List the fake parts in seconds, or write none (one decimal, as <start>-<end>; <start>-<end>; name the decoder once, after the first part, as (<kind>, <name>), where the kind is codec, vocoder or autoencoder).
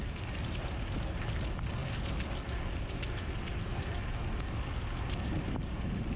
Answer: none